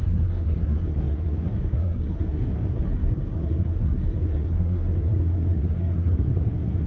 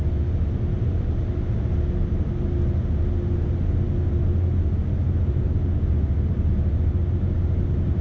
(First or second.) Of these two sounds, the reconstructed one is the first